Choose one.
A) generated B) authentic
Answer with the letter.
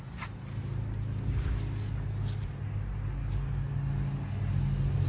B